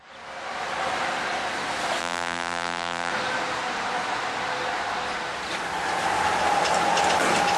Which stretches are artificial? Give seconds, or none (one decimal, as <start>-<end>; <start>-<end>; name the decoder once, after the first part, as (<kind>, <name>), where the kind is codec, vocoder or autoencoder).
2.0-3.1 (vocoder, BigVGAN v2)